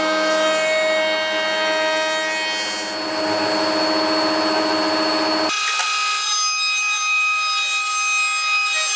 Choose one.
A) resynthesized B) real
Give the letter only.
B